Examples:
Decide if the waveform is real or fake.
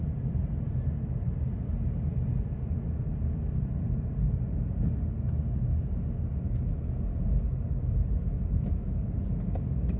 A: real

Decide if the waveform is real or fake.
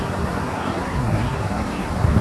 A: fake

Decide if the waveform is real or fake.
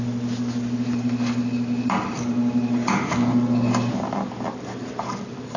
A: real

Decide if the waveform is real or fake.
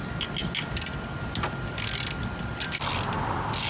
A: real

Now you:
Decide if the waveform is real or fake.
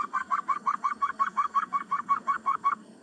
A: fake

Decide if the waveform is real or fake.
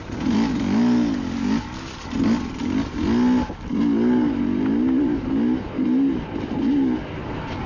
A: real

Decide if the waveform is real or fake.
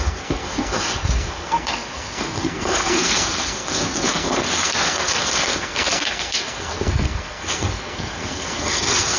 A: fake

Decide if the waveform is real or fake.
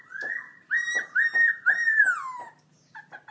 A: real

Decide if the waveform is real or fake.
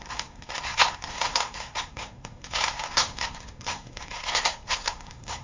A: fake